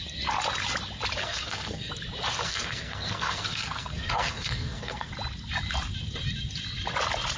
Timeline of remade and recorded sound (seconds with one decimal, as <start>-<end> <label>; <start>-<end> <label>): 0.0-1.2 recorded; 1.2-1.9 remade; 1.9-2.4 recorded; 2.4-5.1 remade; 5.1-7.4 recorded